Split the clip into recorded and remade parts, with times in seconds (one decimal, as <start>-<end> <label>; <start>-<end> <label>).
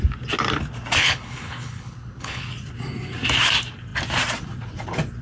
0.0-1.0 recorded; 1.0-2.4 remade; 2.4-5.2 recorded